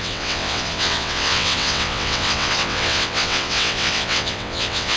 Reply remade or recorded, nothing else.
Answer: remade